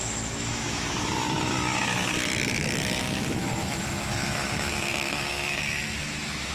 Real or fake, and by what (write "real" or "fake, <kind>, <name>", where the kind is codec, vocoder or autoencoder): fake, autoencoder, DAC-VAE